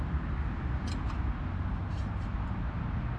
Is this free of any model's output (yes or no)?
yes